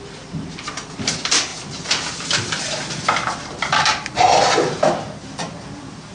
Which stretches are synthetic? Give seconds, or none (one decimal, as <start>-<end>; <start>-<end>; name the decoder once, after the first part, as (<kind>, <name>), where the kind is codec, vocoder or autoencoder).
none